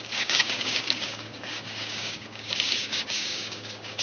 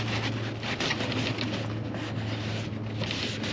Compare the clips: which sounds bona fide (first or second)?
second